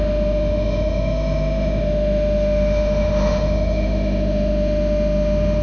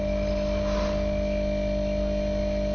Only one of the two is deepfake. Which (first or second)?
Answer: first